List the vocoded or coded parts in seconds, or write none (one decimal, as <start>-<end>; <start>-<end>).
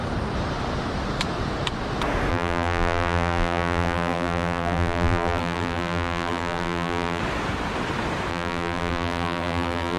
2.3-7.2; 8.3-10.0